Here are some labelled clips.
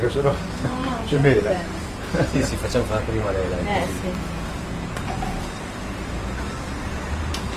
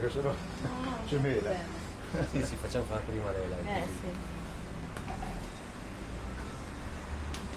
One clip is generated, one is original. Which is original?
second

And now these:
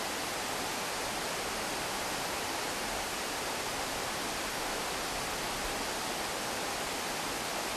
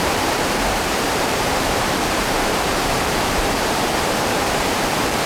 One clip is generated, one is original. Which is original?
first